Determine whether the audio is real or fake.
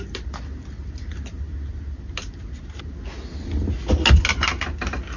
real